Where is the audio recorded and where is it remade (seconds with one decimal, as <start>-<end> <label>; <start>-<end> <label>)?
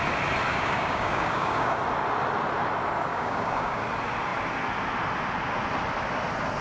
0.0-0.5 recorded; 0.5-1.8 remade; 1.8-3.1 recorded; 3.1-3.8 remade; 3.8-6.6 recorded